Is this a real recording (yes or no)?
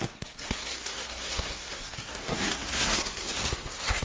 no